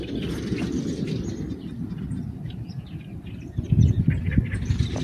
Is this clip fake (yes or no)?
no